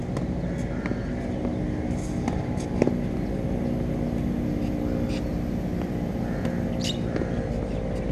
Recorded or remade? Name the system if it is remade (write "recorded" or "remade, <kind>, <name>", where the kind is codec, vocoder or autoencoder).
recorded